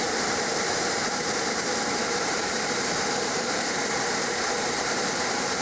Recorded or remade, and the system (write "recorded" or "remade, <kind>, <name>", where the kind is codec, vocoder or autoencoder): remade, vocoder, BigVGAN v2